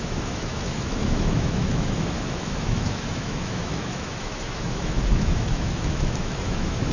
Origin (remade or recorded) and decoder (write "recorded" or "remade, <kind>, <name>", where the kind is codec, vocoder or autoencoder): remade, autoencoder, DAC-VAE